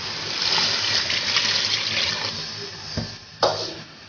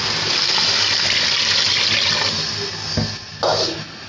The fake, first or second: first